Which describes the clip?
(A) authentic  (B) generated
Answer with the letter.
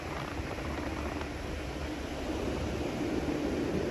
A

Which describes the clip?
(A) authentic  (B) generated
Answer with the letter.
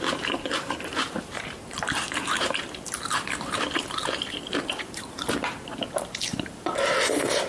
B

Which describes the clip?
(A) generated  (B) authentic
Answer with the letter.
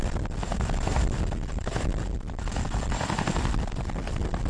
B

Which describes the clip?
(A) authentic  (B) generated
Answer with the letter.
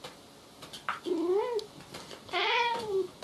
A